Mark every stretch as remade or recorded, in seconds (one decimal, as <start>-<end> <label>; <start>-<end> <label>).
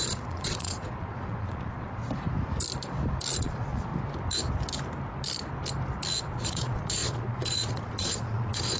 0.0-2.0 remade; 2.0-3.4 recorded; 3.4-3.9 remade; 3.9-6.2 recorded; 6.2-8.8 remade